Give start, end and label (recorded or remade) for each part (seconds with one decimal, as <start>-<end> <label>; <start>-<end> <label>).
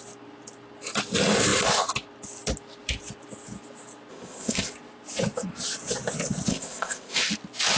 0.0-4.1 recorded; 4.1-4.7 remade; 4.7-6.5 recorded; 6.5-7.3 remade; 7.3-7.8 recorded